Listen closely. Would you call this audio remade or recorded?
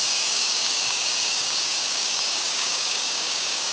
remade